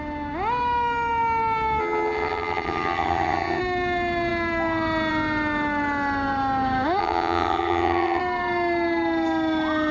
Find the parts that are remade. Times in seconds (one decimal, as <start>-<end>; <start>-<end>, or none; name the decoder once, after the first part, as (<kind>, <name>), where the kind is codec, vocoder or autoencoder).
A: 1.8-3.6 (vocoder, HiFi-GAN); 7.0-8.2